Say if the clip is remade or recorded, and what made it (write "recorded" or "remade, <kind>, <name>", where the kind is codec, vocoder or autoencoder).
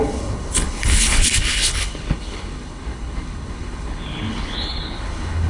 remade, codec, HILCodec